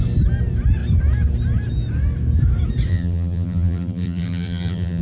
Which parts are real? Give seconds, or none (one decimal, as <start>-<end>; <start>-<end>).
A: 0.0-2.9